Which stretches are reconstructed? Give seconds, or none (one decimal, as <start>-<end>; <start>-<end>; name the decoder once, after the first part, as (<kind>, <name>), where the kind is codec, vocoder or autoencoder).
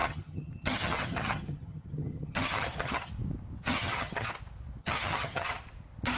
0.0-3.1 (vocoder, HiFi-GAN); 3.6-4.3; 4.8-5.5